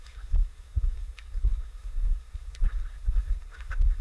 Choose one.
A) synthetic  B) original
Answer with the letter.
A